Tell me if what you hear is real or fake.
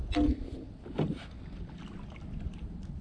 real